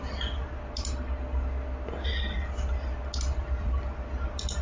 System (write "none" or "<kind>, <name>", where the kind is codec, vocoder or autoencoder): none